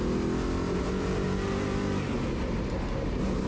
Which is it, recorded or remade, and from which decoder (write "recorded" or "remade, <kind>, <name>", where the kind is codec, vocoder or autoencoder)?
recorded